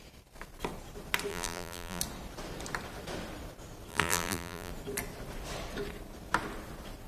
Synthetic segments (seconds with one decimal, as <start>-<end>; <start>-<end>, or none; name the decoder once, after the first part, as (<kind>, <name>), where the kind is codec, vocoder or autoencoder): 1.3-2.0 (vocoder, BigVGAN v2); 3.9-4.7